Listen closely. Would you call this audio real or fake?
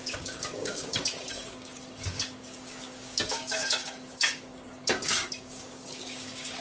fake